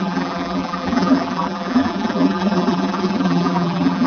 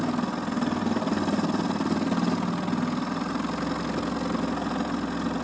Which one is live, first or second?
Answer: second